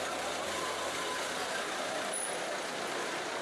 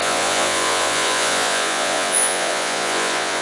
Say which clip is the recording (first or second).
first